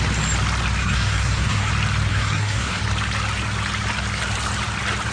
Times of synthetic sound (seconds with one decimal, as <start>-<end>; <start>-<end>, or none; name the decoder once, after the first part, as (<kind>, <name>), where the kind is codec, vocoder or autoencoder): 0.8-1.7 (codec, SNAC); 2.1-2.8